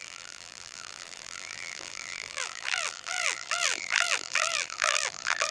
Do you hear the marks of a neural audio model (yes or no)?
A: yes